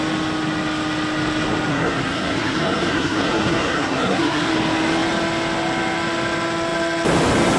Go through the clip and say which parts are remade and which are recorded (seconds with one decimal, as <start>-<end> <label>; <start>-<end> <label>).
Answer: 0.0-1.7 recorded; 1.7-4.5 remade; 4.5-7.6 recorded